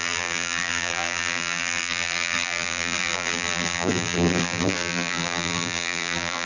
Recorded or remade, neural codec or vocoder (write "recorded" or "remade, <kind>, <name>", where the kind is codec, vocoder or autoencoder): remade, vocoder, BigVGAN v2